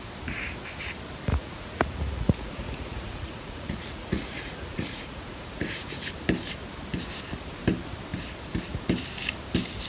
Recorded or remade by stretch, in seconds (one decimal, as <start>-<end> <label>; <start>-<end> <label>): 0.0-1.3 recorded; 1.3-6.1 remade; 6.1-9.9 recorded